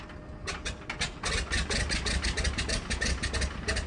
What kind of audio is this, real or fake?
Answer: real